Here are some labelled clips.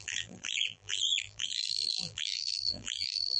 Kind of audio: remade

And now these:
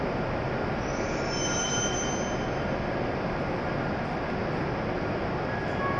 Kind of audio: recorded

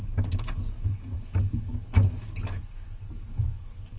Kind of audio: remade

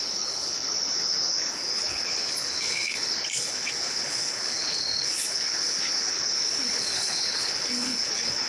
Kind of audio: remade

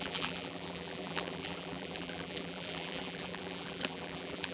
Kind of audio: remade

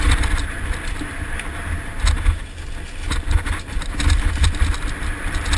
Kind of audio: recorded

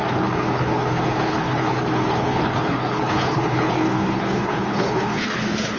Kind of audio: remade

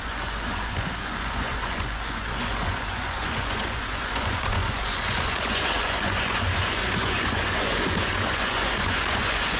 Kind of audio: remade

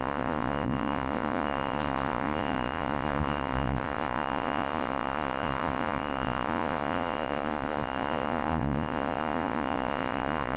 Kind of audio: remade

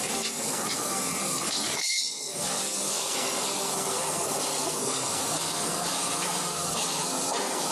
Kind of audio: remade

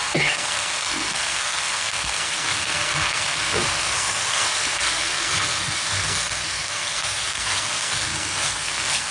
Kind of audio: remade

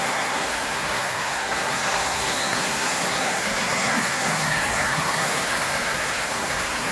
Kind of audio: remade